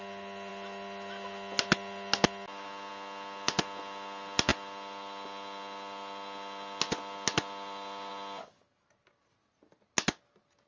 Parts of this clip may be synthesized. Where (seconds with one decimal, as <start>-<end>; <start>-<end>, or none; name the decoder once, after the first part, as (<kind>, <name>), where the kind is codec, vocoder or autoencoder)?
none